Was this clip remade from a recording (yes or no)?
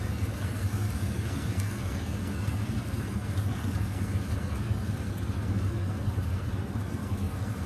yes